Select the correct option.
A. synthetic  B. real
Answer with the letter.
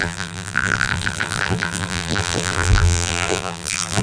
A